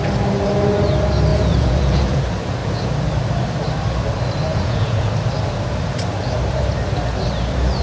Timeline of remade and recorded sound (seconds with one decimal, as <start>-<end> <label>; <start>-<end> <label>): 0.0-1.3 recorded; 1.3-2.2 remade; 2.2-4.5 recorded; 4.5-5.1 remade; 5.1-7.8 recorded